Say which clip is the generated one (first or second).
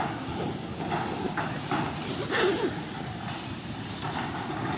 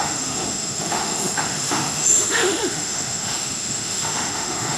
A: second